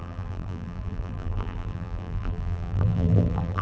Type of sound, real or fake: fake